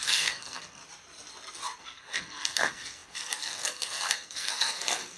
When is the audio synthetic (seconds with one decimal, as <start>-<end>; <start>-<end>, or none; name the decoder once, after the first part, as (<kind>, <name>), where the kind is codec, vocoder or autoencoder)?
0.0-0.8 (codec, SNAC); 1.8-5.2